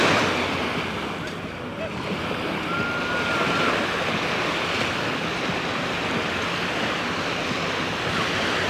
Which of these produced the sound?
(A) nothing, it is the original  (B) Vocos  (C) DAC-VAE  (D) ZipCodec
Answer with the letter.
A